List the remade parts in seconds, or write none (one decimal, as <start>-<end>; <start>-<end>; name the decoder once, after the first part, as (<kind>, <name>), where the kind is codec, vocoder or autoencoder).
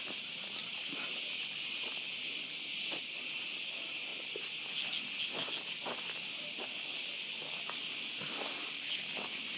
0.0-4.1 (vocoder, BigVGAN v2); 6.8-9.6